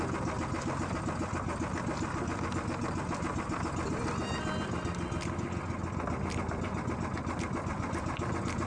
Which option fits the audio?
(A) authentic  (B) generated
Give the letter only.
A